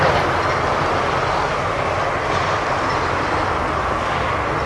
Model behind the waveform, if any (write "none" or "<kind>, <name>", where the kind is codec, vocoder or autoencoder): none